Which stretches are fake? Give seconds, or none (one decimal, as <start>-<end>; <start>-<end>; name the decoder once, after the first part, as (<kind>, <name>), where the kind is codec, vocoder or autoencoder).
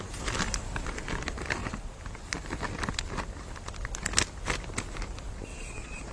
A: 5.5-6.1 (vocoder, Vocos)